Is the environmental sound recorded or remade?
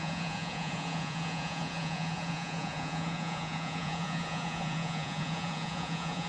remade